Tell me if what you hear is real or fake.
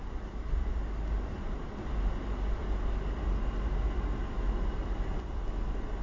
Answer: real